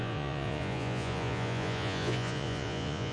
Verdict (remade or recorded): remade